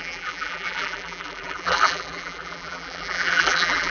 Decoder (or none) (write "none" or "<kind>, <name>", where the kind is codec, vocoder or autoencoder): vocoder, BigVGAN v2